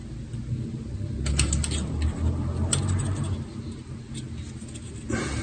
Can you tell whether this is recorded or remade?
recorded